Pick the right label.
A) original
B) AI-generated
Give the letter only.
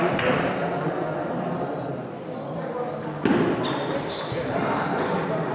A